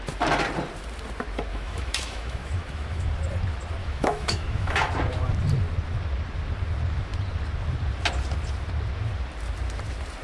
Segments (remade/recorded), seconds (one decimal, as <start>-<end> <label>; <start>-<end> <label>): 0.0-1.5 recorded; 1.5-3.1 remade; 3.1-3.8 recorded; 3.8-4.9 remade; 4.9-10.2 recorded